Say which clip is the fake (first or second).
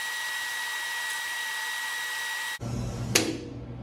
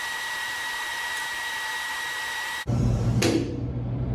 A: second